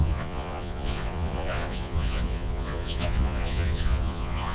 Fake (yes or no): yes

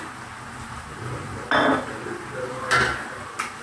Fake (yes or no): no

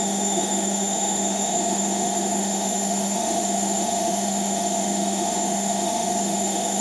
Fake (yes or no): yes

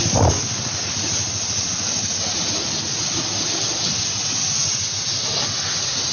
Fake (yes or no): no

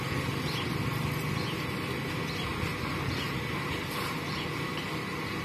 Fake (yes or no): no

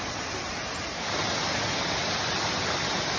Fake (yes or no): no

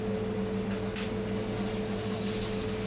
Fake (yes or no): no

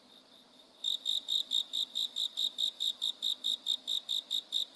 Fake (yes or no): no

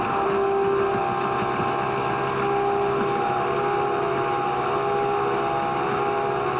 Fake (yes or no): no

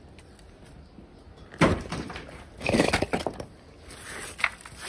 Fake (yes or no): no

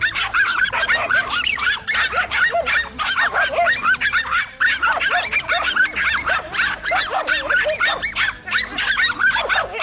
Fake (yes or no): no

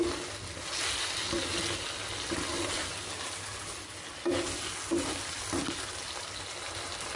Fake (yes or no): no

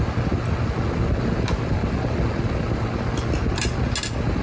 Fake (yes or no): no